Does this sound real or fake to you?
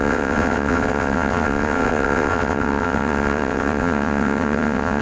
fake